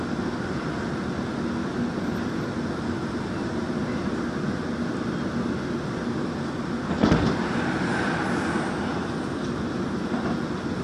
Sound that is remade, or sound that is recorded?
recorded